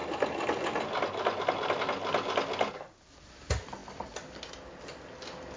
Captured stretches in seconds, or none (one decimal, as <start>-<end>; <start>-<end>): 0.0-5.6